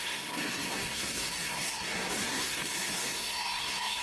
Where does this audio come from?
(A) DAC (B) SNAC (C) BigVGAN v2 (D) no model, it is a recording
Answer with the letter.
B